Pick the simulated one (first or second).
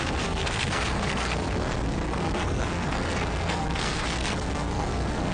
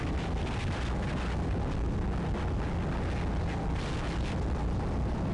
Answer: first